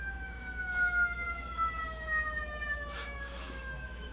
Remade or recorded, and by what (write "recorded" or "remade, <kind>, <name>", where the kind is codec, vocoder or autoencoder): remade, autoencoder, DAC-VAE